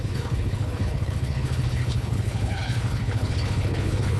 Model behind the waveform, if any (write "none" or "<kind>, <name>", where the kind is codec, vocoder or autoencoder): codec, HILCodec